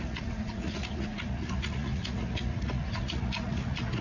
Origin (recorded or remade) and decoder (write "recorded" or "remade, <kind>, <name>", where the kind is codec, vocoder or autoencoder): remade, vocoder, Vocos